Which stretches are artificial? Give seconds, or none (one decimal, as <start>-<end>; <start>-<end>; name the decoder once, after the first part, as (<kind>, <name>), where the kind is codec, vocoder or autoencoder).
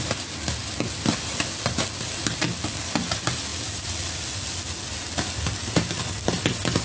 0.0-0.6 (vocoder, BigVGAN v2); 2.2-3.5; 5.7-6.8